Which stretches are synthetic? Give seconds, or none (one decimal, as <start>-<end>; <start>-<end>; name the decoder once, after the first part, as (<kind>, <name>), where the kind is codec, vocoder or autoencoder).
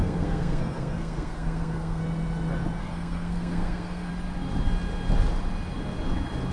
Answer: 0.0-2.0 (codec, SNAC); 2.8-4.1